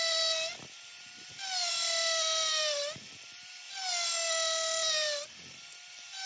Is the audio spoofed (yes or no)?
no